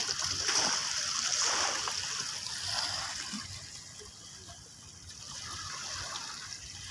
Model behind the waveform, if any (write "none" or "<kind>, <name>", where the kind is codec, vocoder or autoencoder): none